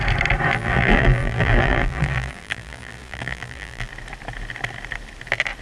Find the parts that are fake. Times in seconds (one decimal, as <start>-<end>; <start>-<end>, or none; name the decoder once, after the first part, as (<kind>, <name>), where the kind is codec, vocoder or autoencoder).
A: 0.5-3.9 (vocoder, BigVGAN v2)